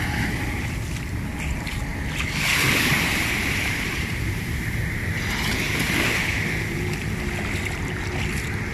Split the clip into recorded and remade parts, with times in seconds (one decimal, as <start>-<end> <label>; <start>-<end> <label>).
0.0-2.9 recorded; 2.9-7.3 remade; 7.3-8.7 recorded